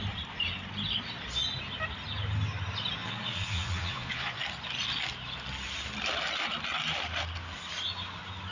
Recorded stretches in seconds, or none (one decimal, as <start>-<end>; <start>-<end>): 0.0-3.0; 4.4-8.5